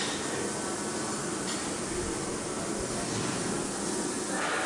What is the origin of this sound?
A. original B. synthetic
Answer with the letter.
A